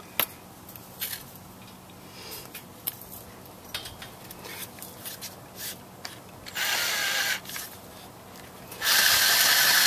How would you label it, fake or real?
real